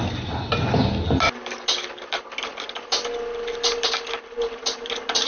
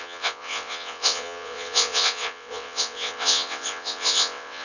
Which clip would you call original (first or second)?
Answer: first